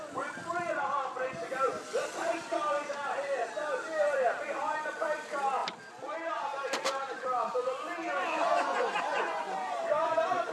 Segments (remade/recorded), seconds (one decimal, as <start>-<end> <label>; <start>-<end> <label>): 0.0-8.5 recorded; 8.5-9.8 remade; 9.8-10.5 recorded